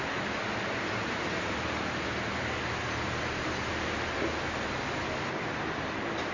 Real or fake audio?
real